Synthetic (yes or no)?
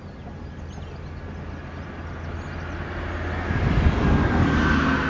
no